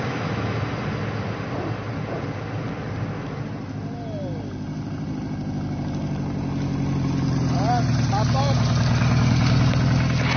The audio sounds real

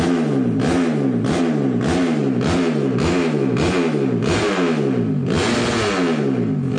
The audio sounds real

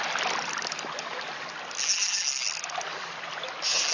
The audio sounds real